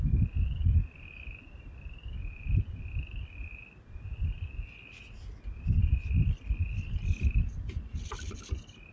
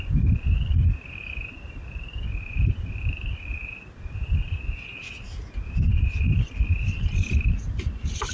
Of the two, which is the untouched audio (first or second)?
first